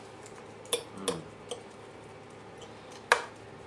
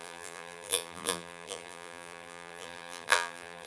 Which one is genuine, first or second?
first